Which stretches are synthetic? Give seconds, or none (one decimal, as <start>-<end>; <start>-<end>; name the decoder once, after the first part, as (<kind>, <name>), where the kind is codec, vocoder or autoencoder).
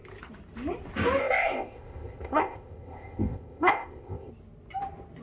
1.2-4.3 (codec, ZipCodec)